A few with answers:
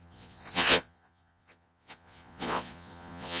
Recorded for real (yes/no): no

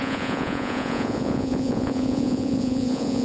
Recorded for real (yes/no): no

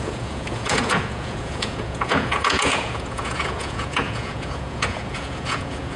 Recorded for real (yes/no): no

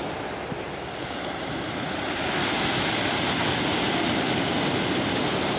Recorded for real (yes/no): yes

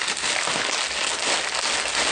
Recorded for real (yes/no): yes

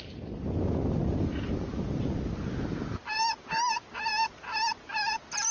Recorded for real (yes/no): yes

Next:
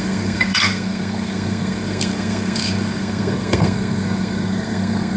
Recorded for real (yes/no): no